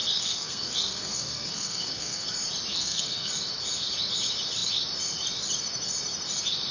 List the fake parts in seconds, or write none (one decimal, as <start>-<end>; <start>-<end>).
0.0-2.3; 2.7-3.3